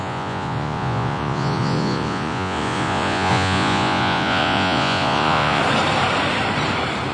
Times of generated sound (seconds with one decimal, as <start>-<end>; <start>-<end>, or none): 0.0-5.6